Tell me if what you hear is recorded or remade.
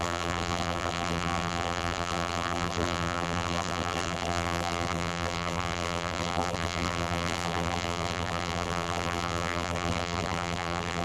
remade